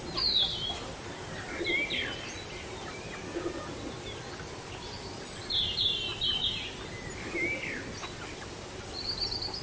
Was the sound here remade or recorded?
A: recorded